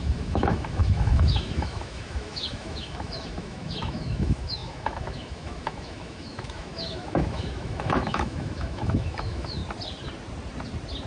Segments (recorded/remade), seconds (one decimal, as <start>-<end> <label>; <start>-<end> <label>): 0.0-9.6 remade; 9.6-11.1 recorded